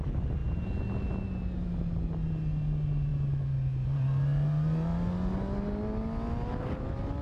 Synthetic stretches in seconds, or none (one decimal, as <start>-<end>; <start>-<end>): none